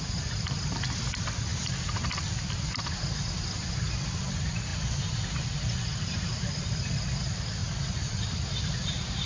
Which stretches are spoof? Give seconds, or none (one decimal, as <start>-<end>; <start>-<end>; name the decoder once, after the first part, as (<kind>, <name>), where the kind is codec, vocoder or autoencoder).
none